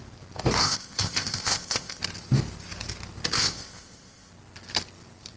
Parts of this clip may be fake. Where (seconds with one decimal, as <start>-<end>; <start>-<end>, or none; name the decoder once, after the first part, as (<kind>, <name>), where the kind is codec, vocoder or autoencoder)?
0.6-2.0 (codec, ZipCodec); 3.4-4.3